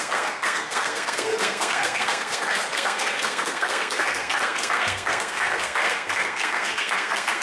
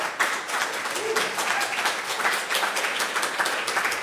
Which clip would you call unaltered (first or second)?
second